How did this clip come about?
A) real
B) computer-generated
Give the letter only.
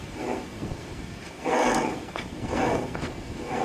B